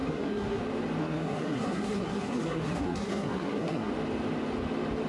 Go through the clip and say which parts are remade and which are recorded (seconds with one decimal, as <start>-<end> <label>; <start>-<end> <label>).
0.0-0.6 remade; 0.6-1.0 recorded; 1.0-3.9 remade; 3.9-5.1 recorded